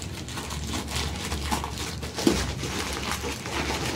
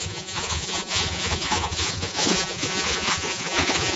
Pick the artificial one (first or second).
second